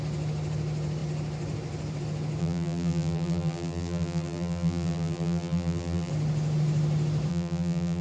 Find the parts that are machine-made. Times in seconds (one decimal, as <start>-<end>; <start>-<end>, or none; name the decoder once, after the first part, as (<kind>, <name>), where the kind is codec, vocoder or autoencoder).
2.4-6.1 (vocoder, BigVGAN v2); 7.3-8.0